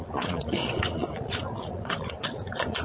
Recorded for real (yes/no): no